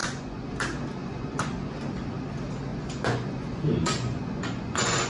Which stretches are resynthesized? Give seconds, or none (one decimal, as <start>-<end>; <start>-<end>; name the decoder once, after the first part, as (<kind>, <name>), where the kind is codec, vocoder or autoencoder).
0.0-0.5 (vocoder, Vocos); 1.0-1.7; 2.7-5.1